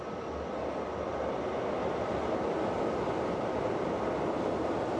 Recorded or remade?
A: recorded